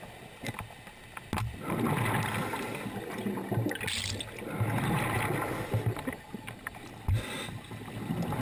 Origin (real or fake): real